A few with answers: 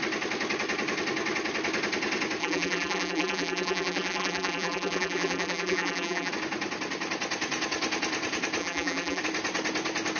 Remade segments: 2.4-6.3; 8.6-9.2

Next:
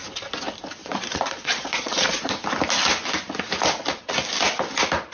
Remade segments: 0.8-2.3

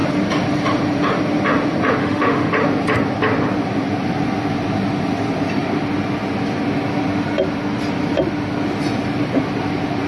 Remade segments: 2.0-2.5

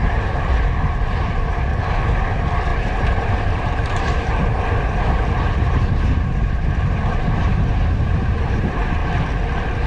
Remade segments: 0.0-1.7; 2.2-9.0

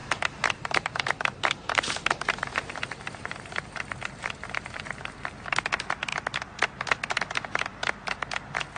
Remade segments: 0.0-5.3

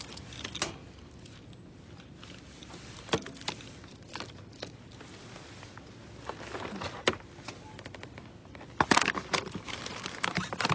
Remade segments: none

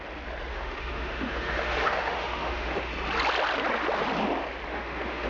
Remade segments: 0.5-2.9; 4.7-5.3